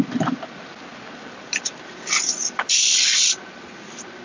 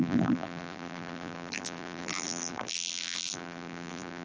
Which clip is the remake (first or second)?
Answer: second